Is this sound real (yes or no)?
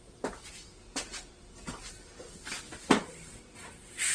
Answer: yes